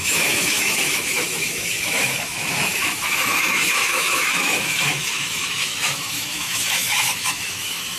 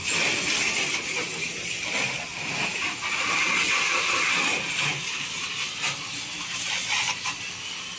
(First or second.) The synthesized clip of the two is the first